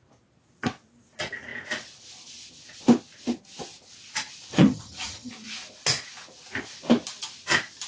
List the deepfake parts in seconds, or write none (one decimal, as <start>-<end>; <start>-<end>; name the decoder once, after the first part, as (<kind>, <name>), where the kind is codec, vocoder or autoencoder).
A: 4.5-5.3 (vocoder, HiFi-GAN)